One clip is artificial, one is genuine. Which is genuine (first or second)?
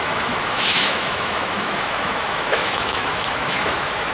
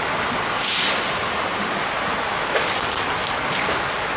second